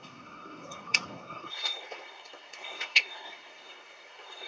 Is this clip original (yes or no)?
no